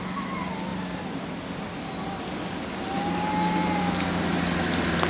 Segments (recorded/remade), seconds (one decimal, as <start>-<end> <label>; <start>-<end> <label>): 0.0-5.1 recorded